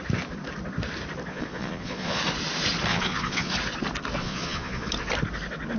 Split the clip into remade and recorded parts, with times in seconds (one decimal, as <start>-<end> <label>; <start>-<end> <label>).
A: 0.0-1.3 recorded; 1.3-2.2 remade; 2.2-2.9 recorded; 2.9-3.5 remade; 3.5-4.2 recorded; 4.2-4.9 remade; 4.9-5.8 recorded